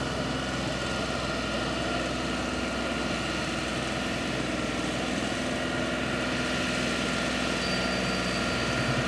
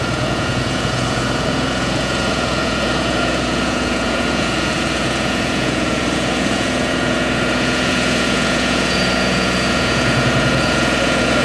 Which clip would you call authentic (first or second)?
first